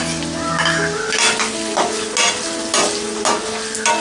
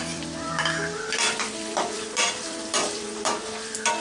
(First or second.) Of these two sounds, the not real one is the second